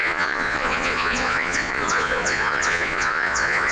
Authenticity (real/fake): fake